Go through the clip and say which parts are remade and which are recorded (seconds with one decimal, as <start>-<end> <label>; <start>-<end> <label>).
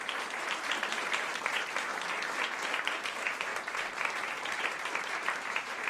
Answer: 0.0-1.9 remade; 1.9-2.9 recorded; 2.9-5.9 remade